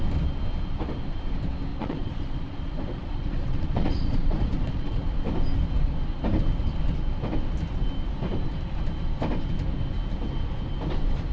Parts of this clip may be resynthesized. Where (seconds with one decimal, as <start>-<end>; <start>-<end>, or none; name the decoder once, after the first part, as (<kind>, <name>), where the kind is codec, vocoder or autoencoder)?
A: 1.7-5.1 (vocoder, Vocos)